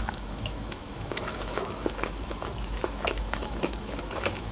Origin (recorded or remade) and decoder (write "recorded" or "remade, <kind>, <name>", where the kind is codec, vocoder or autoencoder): remade, autoencoder, DAC-VAE